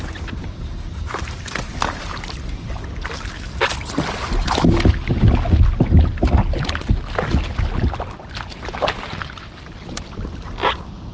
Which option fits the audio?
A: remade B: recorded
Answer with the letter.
B